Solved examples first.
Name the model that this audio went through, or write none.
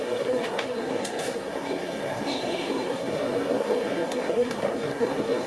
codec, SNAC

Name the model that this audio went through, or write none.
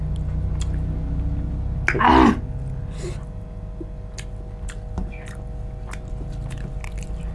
none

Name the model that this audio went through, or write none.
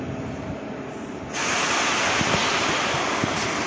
none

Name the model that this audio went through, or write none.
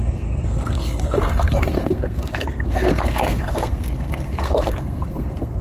codec, SNAC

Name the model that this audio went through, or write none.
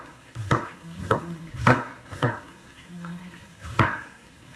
codec, SNAC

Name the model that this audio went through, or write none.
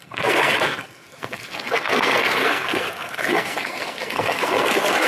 codec, SNAC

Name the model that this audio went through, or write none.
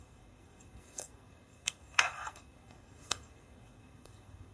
codec, SNAC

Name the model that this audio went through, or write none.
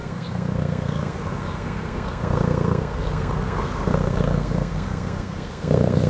codec, SNAC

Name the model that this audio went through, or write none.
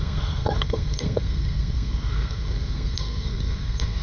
codec, SNAC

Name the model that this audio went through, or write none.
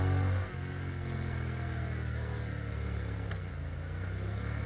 codec, SNAC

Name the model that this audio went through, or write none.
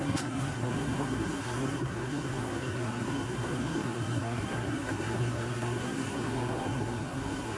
codec, SNAC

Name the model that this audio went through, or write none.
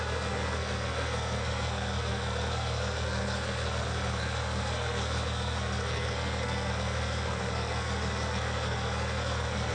codec, SNAC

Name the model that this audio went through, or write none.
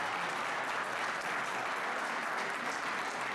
none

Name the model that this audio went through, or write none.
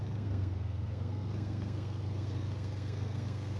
codec, SNAC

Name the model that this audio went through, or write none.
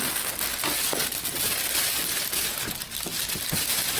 none